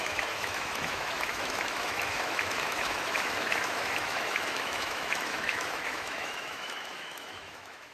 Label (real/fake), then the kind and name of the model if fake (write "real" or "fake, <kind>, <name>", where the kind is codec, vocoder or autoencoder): fake, autoencoder, DAC-VAE